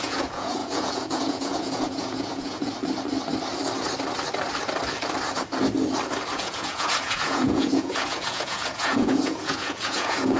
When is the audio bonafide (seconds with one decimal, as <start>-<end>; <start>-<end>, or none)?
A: 2.7-6.3